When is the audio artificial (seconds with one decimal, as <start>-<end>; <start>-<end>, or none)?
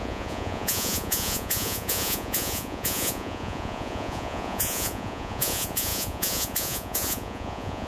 0.0-7.9